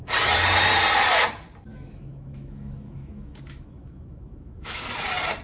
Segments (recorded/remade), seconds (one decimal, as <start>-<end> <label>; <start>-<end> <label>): 0.0-1.7 recorded; 1.7-4.8 remade; 4.8-5.4 recorded